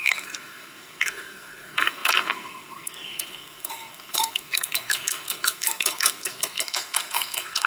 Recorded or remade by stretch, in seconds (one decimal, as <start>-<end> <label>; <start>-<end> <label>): 0.0-7.7 remade

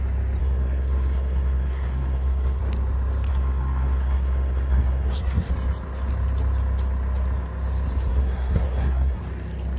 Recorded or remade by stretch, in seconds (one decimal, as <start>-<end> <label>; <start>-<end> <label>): 0.0-0.4 recorded; 0.4-2.6 remade; 2.6-3.3 recorded; 3.3-5.5 remade; 5.5-8.1 recorded; 8.1-9.2 remade; 9.2-9.8 recorded

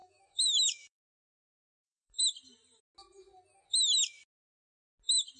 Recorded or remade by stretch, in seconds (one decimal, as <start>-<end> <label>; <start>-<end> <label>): 0.0-2.2 remade; 2.2-5.4 recorded

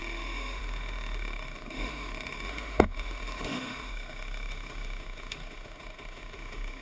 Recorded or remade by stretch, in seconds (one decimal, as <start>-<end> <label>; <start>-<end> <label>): 0.0-6.8 remade

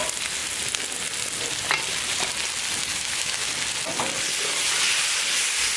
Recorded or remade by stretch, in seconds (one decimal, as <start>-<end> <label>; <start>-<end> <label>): 0.0-2.9 recorded; 2.9-3.5 remade; 3.5-5.8 recorded

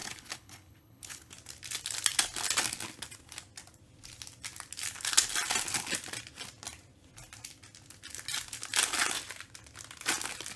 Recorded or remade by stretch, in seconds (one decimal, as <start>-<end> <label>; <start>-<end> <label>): 0.0-1.3 remade; 1.3-10.6 recorded